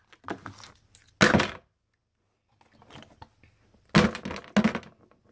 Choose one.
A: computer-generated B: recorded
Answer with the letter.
B